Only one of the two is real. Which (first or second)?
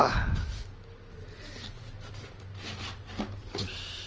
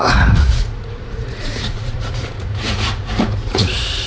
first